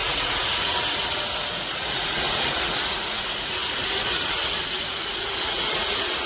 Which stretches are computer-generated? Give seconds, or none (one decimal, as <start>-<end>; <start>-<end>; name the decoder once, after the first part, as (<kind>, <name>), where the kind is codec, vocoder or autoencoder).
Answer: 0.0-6.3 (vocoder, Vocos)